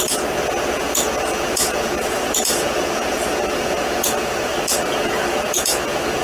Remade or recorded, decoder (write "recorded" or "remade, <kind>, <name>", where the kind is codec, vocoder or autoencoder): remade, vocoder, Vocos